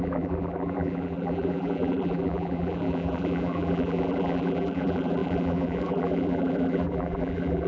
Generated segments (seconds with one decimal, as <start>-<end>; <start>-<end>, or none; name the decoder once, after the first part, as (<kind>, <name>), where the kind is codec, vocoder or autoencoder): 0.0-7.7 (vocoder, BigVGAN v2)